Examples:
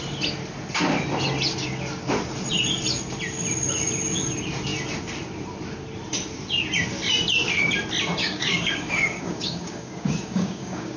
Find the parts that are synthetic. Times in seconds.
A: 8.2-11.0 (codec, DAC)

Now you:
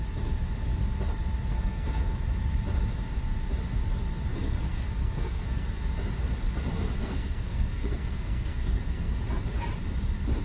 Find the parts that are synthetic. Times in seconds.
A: 1.5-2.2 (codec, SNAC); 4.3-5.8; 7.0-9.2

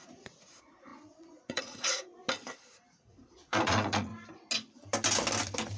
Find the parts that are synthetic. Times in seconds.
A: 0.0-2.2 (vocoder, Vocos); 2.9-4.1

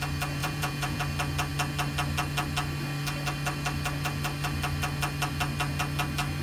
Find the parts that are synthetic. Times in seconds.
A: 0.4-1.0 (vocoder, Vocos)

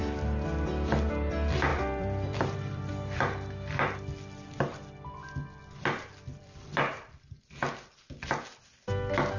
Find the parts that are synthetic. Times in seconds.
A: 1.7-2.9 (vocoder, BigVGAN v2); 6.3-7.2

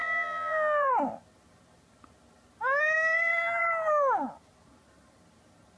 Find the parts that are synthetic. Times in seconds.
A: 0.0-0.9 (vocoder, BigVGAN v2)

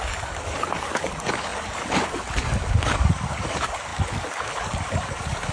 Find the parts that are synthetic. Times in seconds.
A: 0.0-5.5 (codec, DAC)

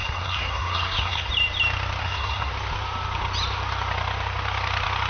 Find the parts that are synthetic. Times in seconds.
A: 0.0-1.3 (codec, SNAC); 2.0-2.5